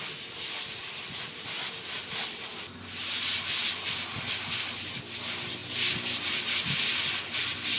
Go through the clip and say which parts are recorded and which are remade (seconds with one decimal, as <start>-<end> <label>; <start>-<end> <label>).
0.0-7.8 recorded